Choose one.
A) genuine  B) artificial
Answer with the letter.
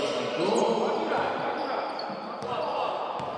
A